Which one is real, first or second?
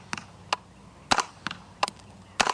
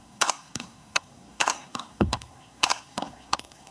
first